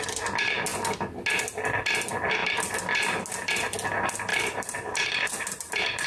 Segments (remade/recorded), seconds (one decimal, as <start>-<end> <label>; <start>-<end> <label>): 0.0-4.3 recorded; 4.3-6.1 remade